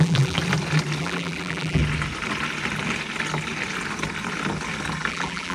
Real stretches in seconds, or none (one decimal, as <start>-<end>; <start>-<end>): 0.4-1.0; 1.8-5.1